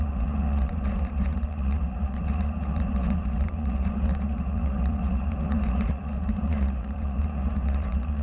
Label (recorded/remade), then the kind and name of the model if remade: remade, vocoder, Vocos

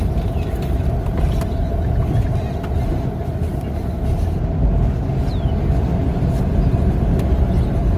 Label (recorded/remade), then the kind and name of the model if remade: recorded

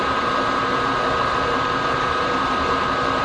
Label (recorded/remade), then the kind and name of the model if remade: remade, vocoder, BigVGAN v2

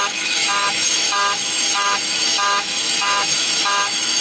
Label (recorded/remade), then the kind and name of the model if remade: remade, autoencoder, DAC-VAE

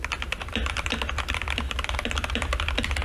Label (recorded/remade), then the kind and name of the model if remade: remade, vocoder, BigVGAN v2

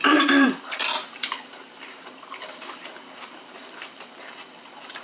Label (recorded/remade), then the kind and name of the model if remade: remade, vocoder, BigVGAN v2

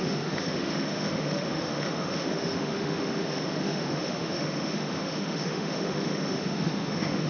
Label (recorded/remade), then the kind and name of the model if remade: remade, autoencoder, DAC-VAE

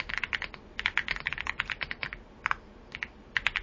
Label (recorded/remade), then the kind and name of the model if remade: recorded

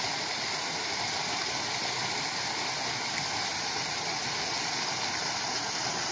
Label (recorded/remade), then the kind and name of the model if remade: recorded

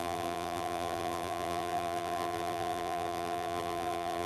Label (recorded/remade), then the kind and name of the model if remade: remade, vocoder, BigVGAN v2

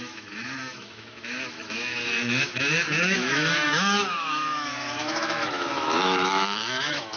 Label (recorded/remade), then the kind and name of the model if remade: remade, autoencoder, DAC-VAE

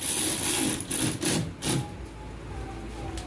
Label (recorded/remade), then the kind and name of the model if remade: recorded